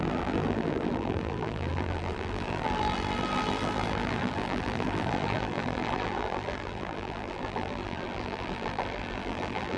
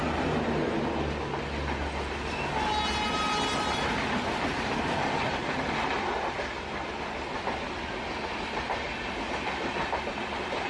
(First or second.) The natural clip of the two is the second